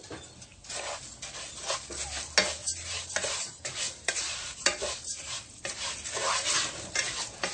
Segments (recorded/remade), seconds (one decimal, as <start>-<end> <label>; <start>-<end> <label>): 0.0-0.5 recorded; 0.5-1.0 remade; 1.0-2.6 recorded; 2.6-6.1 remade; 6.1-7.5 recorded